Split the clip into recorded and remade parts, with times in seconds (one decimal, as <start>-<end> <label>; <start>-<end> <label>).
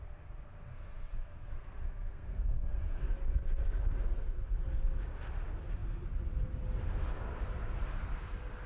0.0-0.7 recorded; 0.7-3.1 remade; 3.1-8.7 recorded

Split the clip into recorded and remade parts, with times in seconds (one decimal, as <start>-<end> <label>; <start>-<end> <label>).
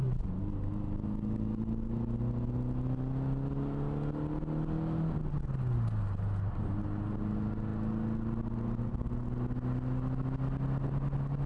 0.0-11.5 recorded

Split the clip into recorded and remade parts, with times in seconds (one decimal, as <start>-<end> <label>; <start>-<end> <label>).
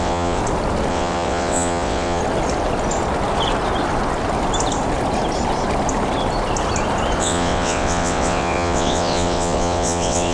0.0-0.4 remade; 0.4-0.9 recorded; 0.9-2.2 remade; 2.2-7.2 recorded; 7.2-10.3 remade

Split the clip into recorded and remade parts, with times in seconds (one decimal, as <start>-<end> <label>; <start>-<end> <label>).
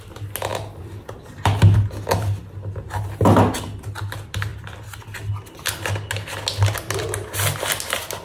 0.0-8.2 recorded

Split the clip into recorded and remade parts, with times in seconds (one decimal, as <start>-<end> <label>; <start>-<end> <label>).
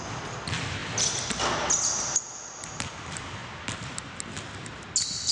0.0-5.3 recorded